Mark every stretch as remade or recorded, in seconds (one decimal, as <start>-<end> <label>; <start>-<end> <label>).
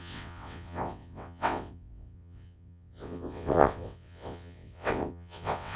0.0-5.8 remade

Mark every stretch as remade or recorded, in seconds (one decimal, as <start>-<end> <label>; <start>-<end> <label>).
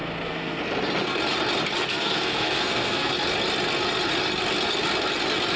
0.0-0.6 remade; 0.6-1.9 recorded; 1.9-3.1 remade; 3.1-5.6 recorded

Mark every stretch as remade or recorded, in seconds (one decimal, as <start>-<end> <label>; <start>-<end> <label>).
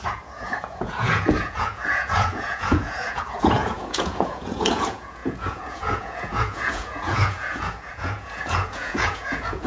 0.0-9.7 remade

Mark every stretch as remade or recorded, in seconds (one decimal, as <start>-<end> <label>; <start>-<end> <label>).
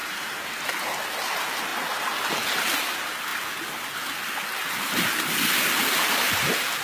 0.0-0.5 remade; 0.5-6.8 recorded